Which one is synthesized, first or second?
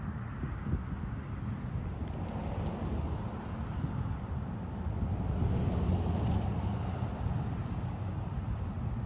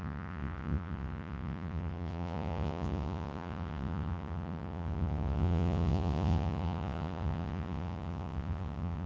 second